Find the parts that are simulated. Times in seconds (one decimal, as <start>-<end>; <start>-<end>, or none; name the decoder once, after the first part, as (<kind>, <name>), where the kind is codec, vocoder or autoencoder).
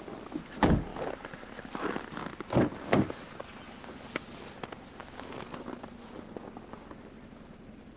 none